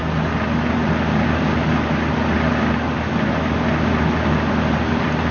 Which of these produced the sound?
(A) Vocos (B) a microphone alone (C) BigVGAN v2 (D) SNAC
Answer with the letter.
B